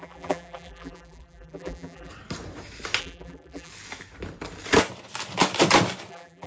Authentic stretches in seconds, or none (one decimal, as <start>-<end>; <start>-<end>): 2.1-3.0; 3.7-6.1